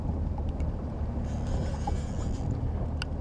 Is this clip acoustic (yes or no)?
yes